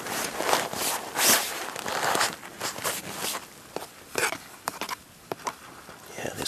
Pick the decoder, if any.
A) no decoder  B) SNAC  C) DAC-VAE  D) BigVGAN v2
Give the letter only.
A